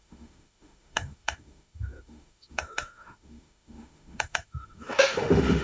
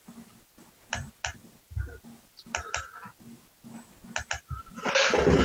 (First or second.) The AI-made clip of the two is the first